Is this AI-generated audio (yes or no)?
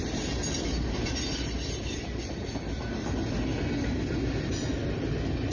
no